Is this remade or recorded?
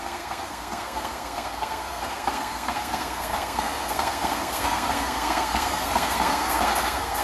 remade